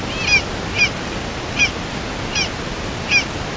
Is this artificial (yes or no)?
no